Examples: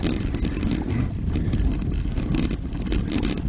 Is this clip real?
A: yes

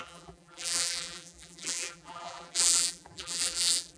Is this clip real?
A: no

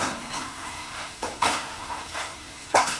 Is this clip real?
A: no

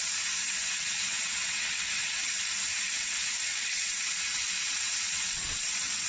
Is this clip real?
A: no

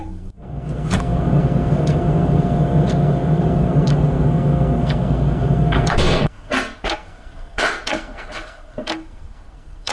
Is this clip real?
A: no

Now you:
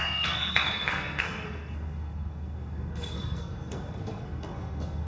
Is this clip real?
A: no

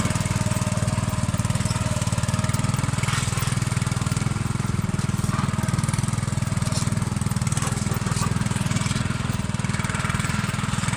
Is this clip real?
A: yes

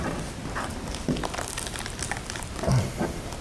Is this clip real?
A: yes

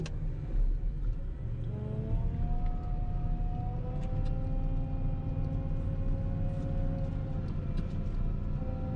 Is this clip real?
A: yes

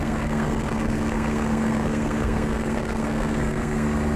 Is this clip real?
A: no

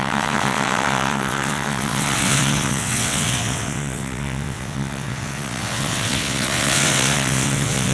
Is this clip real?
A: no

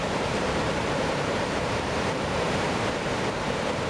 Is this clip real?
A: no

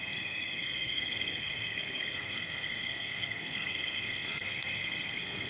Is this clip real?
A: no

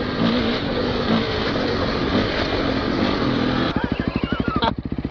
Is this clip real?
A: yes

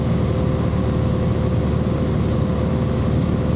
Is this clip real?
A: yes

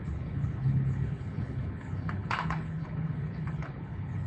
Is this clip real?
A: no